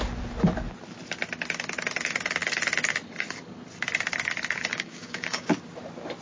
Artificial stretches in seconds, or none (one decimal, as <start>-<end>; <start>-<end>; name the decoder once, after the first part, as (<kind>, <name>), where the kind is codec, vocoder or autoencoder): 4.7-5.5 (codec, DAC)